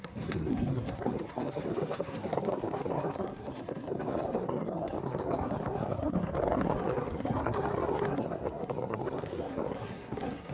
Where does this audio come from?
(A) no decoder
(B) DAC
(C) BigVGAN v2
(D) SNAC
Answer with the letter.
D